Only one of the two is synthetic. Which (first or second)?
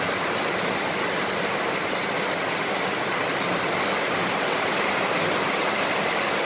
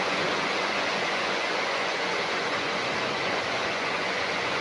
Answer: second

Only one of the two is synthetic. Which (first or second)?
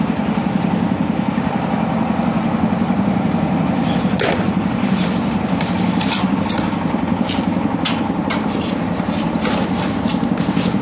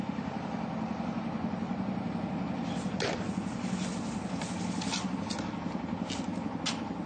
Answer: first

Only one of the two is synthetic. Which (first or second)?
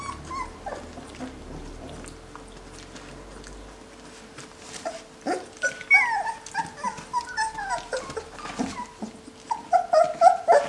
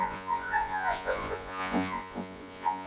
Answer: second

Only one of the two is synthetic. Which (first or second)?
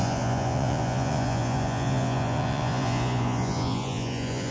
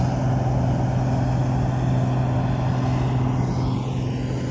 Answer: first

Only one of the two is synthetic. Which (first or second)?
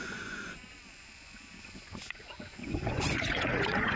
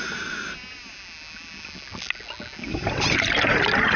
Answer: first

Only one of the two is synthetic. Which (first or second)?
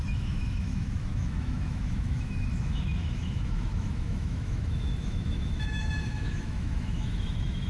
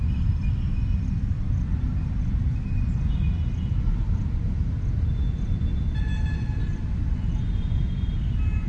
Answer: first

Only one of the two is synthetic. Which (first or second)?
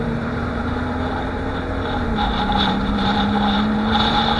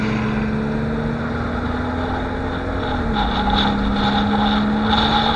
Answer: first